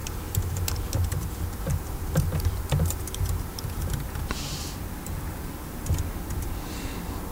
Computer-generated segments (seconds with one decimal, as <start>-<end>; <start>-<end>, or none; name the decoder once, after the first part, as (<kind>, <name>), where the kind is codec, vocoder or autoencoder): 0.0-3.9 (vocoder, BigVGAN v2)

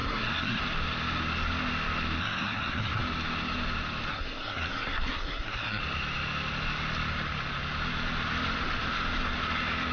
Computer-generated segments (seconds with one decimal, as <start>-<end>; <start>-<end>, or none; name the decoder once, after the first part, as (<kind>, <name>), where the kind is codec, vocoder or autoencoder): 0.0-0.6 (codec, SNAC); 2.2-3.0; 4.1-5.8

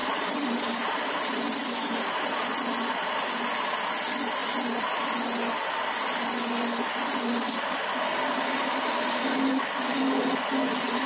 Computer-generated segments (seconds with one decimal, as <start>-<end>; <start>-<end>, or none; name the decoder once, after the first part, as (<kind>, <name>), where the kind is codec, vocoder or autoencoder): 0.0-2.4 (vocoder, BigVGAN v2)